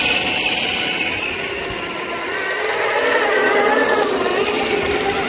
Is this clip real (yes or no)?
yes